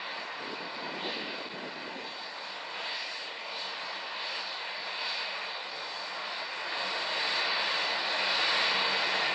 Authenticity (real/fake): real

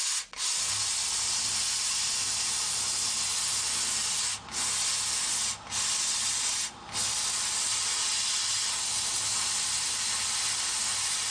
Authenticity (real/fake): real